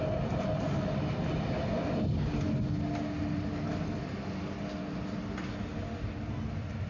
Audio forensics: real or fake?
real